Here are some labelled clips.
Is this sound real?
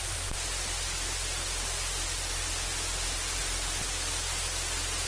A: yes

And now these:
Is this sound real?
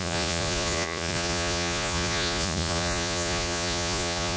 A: no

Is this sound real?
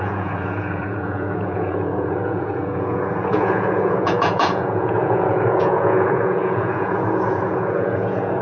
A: no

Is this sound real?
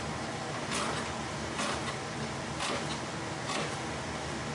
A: yes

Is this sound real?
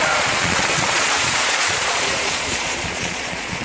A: no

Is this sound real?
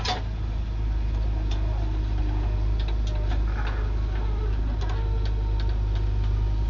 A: yes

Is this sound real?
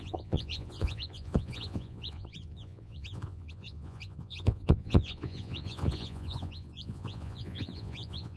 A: no